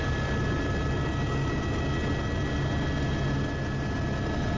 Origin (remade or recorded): recorded